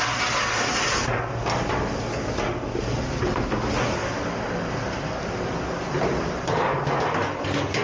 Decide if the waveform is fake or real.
real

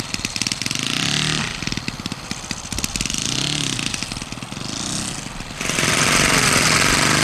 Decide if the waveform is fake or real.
real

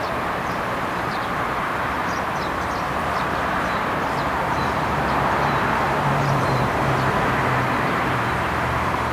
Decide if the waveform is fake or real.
fake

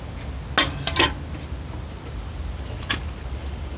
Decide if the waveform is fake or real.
real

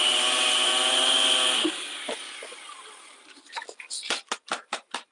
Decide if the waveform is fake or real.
real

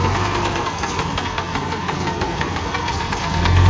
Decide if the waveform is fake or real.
fake